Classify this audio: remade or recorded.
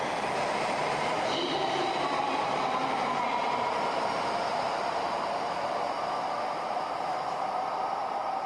remade